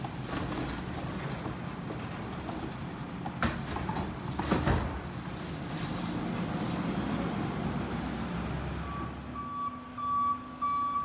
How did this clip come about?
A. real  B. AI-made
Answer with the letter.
A